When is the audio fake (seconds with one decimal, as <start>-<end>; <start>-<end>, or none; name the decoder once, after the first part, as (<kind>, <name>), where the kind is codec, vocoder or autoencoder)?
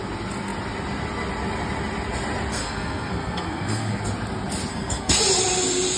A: 2.5-4.0 (codec, SNAC); 4.7-5.2